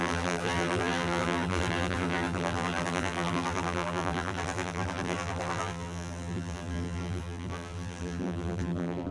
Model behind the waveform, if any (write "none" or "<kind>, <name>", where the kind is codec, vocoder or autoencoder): vocoder, BigVGAN v2